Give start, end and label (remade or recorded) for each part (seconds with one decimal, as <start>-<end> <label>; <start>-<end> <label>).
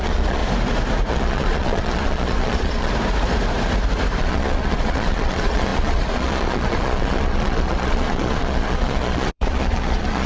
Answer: 0.0-0.4 remade; 0.4-1.1 recorded; 1.1-2.9 remade; 2.9-4.2 recorded; 4.2-10.3 remade